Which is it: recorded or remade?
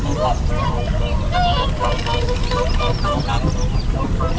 recorded